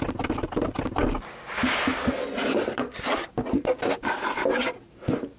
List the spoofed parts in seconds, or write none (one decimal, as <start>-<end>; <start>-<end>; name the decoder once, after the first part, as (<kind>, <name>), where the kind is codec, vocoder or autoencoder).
1.9-4.0 (vocoder, BigVGAN v2)